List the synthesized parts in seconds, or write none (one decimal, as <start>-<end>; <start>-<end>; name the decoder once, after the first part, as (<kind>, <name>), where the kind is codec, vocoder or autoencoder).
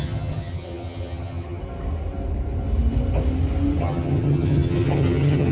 0.0-1.6 (vocoder, HiFi-GAN); 3.8-5.5